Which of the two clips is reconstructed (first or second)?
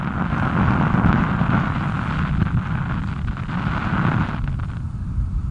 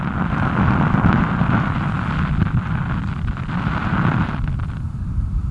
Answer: second